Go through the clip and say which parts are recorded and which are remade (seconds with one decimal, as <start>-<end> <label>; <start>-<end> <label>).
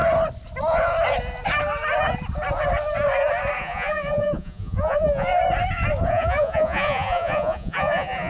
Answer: 0.0-3.6 recorded; 3.6-5.3 remade; 5.3-6.1 recorded; 6.1-8.3 remade